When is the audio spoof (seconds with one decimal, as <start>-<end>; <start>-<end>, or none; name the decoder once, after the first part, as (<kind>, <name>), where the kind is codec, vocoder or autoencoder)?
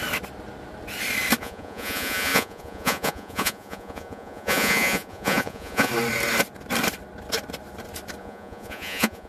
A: 1.4-5.9 (vocoder, Vocos); 8.2-9.3